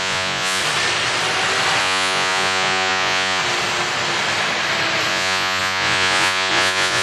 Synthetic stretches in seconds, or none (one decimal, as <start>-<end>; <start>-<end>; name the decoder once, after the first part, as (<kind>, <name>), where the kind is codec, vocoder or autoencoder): 0.0-0.6 (vocoder, Vocos); 1.8-3.4; 5.1-7.0

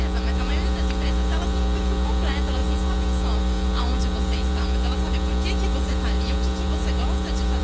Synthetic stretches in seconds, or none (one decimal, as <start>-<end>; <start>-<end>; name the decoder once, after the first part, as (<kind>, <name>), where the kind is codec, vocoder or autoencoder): 0.0-7.6 (vocoder, Vocos)

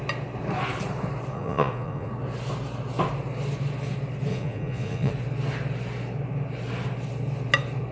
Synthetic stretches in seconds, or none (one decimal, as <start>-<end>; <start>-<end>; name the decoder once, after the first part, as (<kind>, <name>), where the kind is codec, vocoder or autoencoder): 1.3-2.1 (vocoder, Vocos); 4.3-5.1

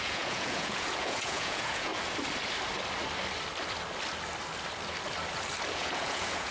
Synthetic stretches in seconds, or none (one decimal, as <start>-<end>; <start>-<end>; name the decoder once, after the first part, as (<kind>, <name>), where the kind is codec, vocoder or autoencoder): 0.0-1.9 (vocoder, Vocos); 5.7-6.5

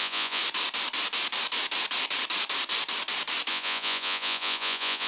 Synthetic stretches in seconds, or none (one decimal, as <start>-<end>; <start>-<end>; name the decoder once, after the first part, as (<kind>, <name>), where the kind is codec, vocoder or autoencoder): 0.0-0.4 (vocoder, Vocos); 3.5-5.1